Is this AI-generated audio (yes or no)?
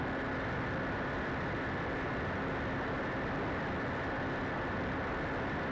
no